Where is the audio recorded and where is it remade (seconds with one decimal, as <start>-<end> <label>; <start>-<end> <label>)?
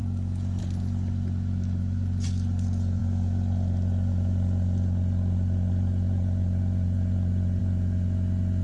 0.0-8.6 recorded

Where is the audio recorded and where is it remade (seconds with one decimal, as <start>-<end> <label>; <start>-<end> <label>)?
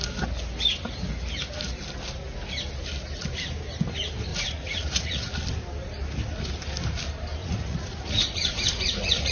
0.0-4.3 recorded; 4.3-5.3 remade; 5.3-7.4 recorded; 7.4-9.3 remade